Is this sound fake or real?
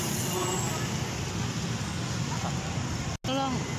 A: real